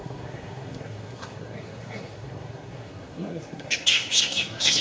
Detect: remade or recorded remade